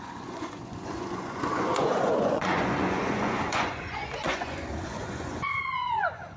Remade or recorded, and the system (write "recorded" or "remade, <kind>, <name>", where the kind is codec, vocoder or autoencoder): remade, vocoder, Vocos